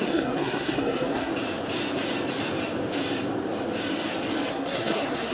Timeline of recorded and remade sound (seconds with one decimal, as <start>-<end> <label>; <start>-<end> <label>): 0.0-1.3 remade; 1.3-4.5 recorded; 4.5-5.3 remade